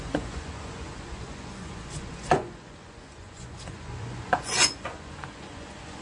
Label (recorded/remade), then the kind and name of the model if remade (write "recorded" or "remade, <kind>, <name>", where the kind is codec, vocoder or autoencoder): remade, vocoder, Vocos